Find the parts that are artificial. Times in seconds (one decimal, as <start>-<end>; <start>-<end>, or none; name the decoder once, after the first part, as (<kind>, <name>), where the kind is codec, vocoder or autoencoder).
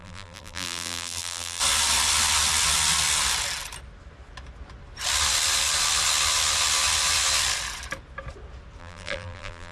0.0-1.6 (vocoder, BigVGAN v2); 8.8-9.7